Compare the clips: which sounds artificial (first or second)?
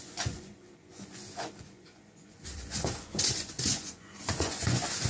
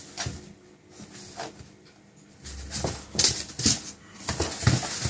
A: first